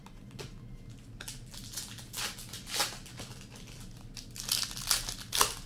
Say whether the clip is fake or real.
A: real